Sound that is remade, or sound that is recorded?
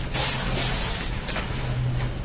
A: recorded